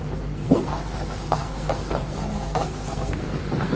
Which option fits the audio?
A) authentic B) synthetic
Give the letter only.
B